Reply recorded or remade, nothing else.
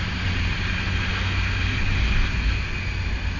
recorded